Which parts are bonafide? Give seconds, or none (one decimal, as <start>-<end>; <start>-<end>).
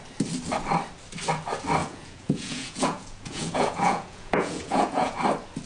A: 0.0-1.8; 5.2-5.7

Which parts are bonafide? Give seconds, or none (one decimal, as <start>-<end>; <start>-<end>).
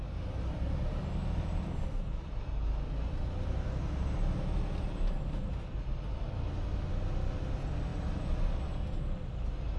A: 0.0-9.8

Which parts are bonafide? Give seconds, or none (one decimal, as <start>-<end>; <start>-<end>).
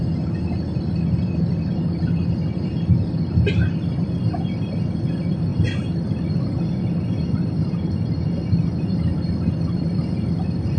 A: 0.0-10.8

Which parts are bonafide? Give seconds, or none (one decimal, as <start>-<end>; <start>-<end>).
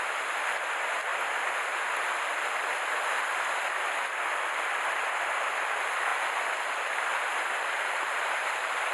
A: 0.0-8.9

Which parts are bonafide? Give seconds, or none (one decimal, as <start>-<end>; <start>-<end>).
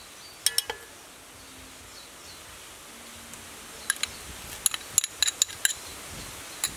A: 0.0-6.8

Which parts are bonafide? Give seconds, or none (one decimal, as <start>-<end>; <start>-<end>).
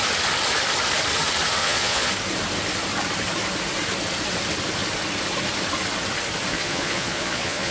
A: 0.0-1.6; 2.1-6.5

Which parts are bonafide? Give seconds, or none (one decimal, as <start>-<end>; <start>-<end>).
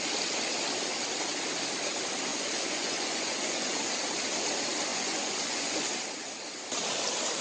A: 0.0-2.3; 3.9-4.9; 5.9-7.4